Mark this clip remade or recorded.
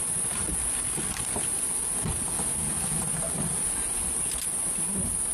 remade